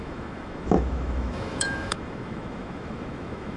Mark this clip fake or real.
fake